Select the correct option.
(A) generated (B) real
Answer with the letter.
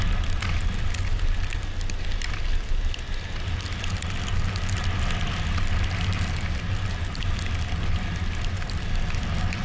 B